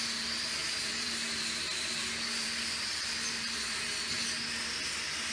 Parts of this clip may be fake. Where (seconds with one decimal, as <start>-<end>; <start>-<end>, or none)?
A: 0.6-3.8